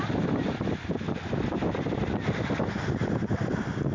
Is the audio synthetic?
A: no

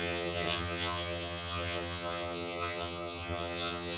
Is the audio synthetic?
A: yes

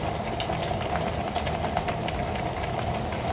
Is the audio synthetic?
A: no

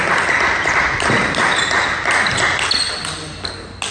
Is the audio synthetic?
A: no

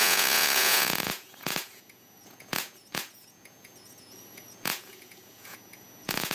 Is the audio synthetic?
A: yes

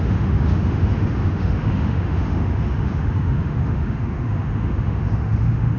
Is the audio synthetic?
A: yes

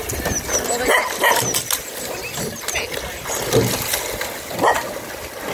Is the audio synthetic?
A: no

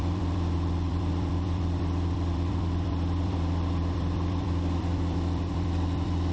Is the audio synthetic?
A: yes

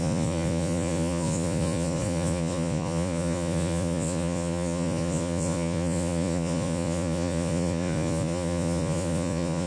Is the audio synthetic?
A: yes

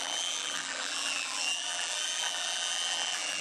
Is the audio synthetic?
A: yes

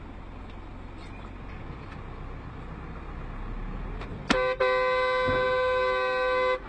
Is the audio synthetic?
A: no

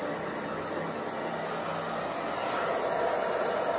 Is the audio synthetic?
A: no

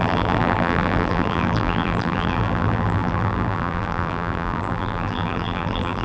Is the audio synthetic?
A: yes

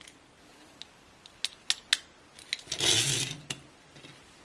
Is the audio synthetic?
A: no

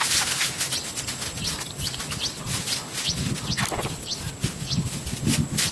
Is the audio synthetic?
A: no